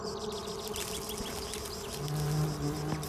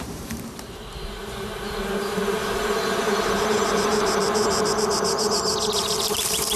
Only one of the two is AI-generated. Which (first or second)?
second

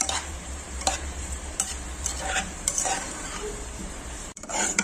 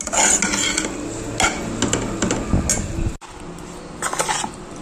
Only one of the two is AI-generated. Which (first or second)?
first